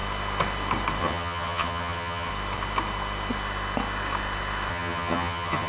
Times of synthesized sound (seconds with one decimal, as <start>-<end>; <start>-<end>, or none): 1.0-2.3; 4.7-5.7